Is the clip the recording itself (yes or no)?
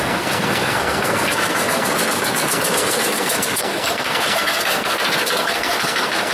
no